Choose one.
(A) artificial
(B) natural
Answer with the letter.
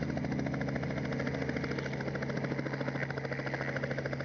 B